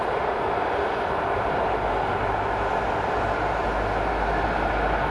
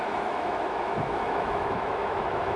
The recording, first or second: first